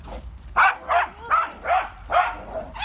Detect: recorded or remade recorded